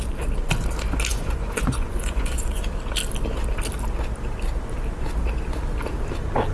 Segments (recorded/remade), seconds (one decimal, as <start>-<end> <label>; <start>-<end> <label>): 0.0-1.1 recorded; 1.1-2.6 remade; 2.6-6.5 recorded